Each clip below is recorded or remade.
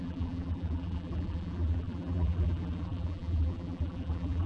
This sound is remade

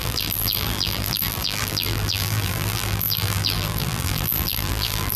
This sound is remade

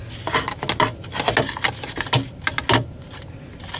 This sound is recorded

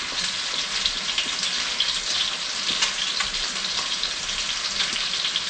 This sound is recorded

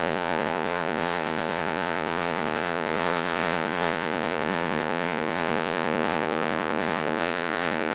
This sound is remade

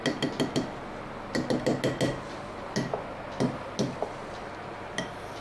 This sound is recorded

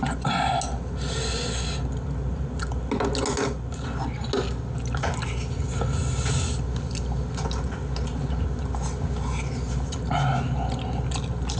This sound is recorded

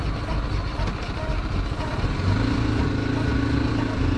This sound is recorded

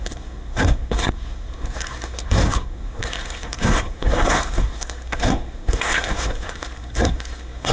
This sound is remade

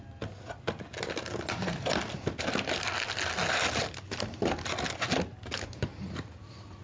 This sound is recorded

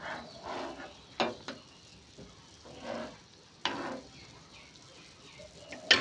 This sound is recorded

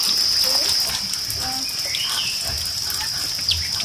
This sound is recorded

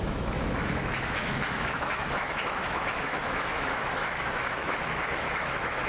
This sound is remade